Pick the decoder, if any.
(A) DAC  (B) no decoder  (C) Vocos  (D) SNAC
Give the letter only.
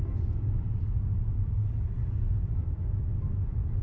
B